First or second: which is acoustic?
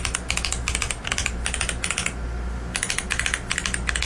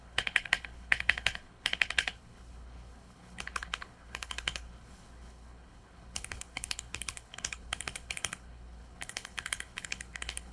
first